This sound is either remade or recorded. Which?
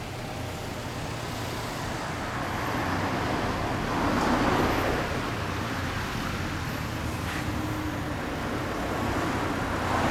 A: recorded